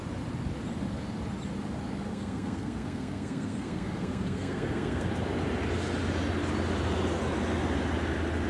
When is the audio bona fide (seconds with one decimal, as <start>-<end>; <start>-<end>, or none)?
0.0-2.1; 5.1-8.5